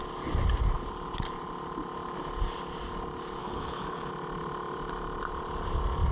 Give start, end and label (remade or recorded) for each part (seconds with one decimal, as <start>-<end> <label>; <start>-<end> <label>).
0.0-3.4 recorded; 3.4-4.1 remade; 4.1-6.1 recorded